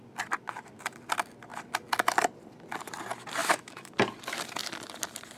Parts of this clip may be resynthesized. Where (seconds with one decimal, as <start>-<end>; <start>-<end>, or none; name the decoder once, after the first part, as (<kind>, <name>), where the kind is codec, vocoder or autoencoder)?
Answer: 3.4-3.9 (autoencoder, DAC-VAE)